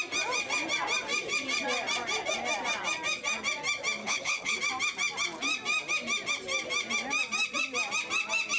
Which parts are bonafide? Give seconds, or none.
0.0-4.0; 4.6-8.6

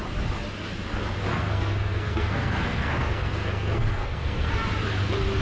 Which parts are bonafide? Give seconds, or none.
0.0-1.3; 4.5-5.4

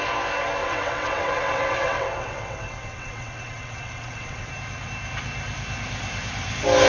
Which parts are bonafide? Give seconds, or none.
0.0-0.6; 4.5-6.9

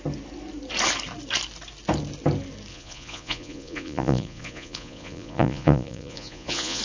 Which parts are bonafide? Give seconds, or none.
0.0-2.7

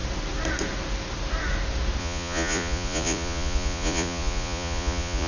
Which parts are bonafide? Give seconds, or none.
0.0-2.0

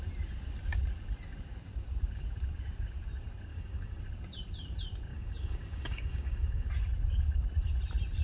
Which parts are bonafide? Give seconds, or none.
0.0-3.5; 4.0-5.1; 6.7-8.2

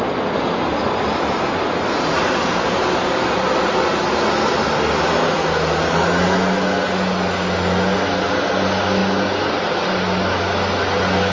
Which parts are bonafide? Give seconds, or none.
0.0-11.3